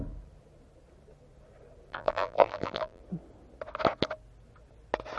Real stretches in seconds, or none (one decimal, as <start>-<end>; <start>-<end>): 0.0-1.9; 3.0-5.2